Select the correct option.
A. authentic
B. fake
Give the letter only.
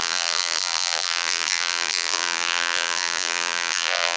B